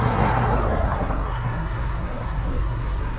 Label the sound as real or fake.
fake